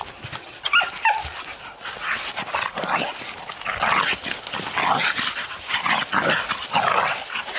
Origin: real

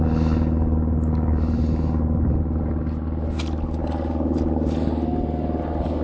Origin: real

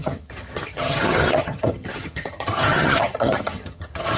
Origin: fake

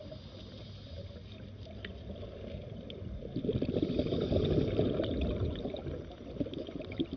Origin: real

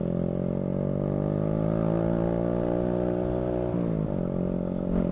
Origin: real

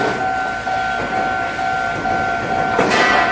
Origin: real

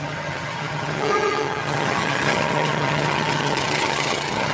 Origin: fake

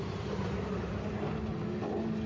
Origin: real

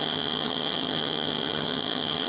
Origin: fake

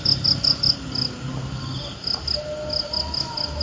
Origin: real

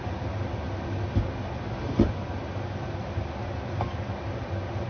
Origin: real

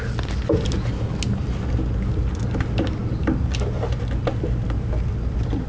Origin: real